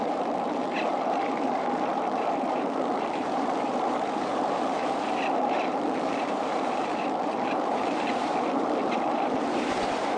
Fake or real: fake